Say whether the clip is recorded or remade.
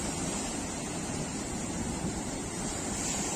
recorded